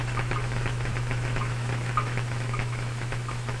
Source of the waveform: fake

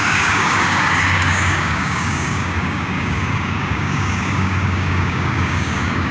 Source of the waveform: fake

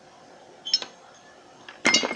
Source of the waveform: real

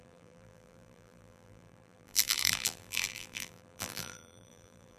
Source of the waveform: fake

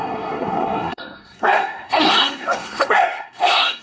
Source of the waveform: fake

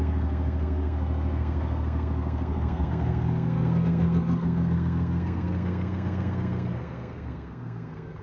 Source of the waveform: fake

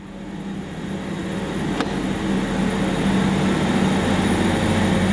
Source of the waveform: real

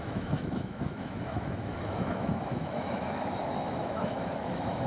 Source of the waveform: fake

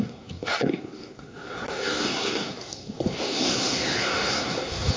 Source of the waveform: fake